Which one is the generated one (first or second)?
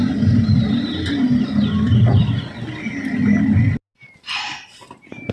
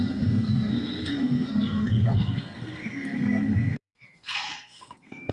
second